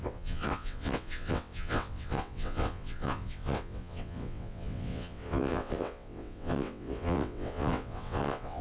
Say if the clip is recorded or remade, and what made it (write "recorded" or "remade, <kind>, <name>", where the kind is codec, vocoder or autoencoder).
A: remade, vocoder, WaveNeXt